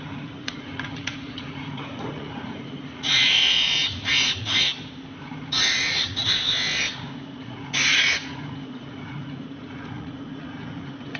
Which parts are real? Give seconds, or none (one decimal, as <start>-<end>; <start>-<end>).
4.7-5.2; 6.2-6.9